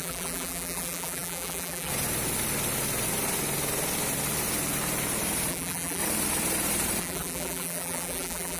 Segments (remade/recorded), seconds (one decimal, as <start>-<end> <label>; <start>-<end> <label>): 0.0-1.9 remade; 1.9-5.5 recorded; 5.5-6.0 remade; 6.0-7.0 recorded; 7.0-8.6 remade